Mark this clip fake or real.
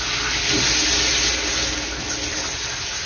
real